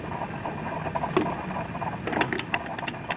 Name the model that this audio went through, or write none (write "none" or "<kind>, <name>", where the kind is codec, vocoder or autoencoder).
none